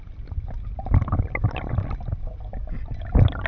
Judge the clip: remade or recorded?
recorded